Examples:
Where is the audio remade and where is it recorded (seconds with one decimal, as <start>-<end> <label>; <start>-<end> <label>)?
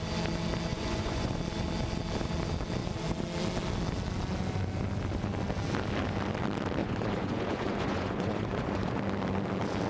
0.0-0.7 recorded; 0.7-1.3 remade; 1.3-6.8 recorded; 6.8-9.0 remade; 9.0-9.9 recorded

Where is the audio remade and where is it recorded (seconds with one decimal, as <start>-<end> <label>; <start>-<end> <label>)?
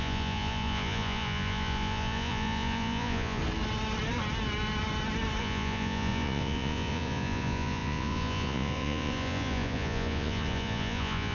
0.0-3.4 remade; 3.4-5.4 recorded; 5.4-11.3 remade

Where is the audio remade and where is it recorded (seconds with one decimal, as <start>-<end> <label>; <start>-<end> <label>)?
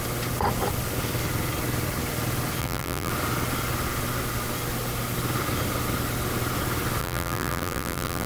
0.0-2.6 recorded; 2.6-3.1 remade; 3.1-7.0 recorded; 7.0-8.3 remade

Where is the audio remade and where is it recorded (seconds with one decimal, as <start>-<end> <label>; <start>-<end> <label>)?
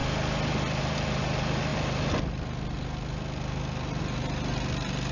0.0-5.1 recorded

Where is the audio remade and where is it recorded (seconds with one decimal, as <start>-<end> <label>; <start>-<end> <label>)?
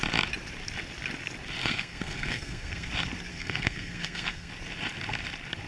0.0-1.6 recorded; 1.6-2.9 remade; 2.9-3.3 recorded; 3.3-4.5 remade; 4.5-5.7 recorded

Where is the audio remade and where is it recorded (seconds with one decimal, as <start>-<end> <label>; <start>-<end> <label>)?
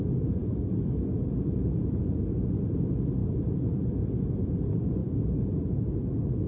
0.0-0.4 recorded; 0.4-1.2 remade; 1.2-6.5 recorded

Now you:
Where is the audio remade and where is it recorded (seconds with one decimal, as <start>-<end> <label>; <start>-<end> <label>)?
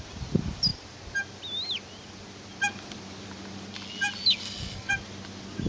0.0-4.4 recorded; 4.4-4.9 remade; 4.9-5.7 recorded